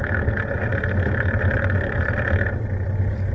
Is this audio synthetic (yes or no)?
no